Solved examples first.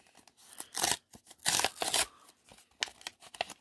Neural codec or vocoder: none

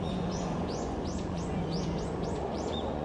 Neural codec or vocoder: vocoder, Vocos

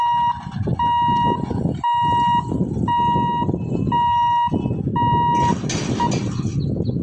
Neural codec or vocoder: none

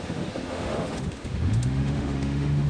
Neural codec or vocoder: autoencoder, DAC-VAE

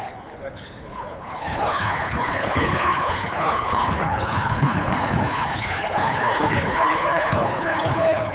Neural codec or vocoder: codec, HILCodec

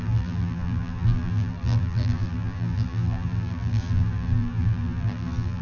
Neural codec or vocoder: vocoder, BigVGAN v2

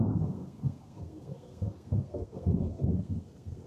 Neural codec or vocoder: codec, SNAC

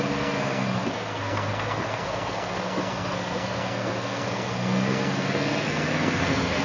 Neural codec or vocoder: codec, SNAC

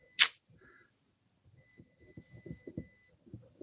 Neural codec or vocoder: none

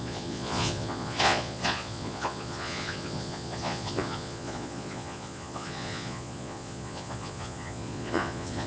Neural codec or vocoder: vocoder, Vocos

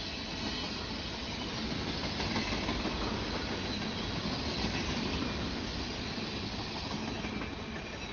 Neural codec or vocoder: none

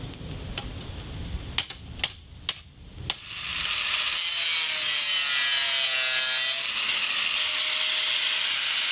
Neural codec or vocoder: none